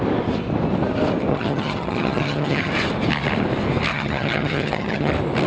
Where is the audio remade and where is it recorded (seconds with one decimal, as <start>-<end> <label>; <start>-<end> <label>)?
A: 0.0-1.3 recorded; 1.3-2.7 remade; 2.7-3.9 recorded; 3.9-5.1 remade; 5.1-5.5 recorded